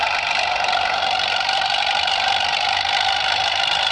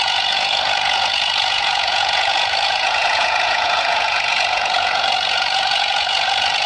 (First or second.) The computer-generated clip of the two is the second